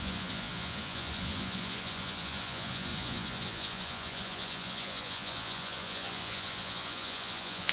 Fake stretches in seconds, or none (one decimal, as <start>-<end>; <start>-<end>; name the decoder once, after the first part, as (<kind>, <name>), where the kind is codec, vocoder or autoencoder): 0.0-7.7 (vocoder, Vocos)